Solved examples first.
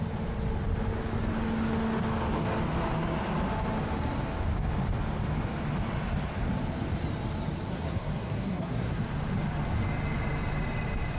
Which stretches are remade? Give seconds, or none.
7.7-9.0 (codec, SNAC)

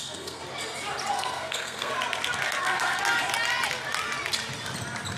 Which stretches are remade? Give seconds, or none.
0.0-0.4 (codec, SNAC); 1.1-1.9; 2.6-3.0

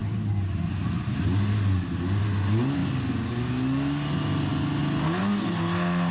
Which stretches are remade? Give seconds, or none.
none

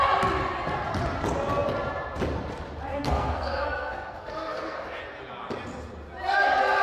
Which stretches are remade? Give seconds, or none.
2.9-5.0 (codec, SNAC)

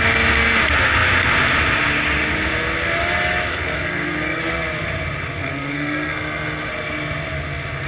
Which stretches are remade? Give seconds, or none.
3.5-4.4 (codec, SNAC); 5.4-6.7

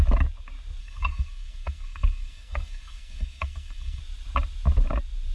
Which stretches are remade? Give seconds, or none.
0.8-4.0 (codec, SNAC)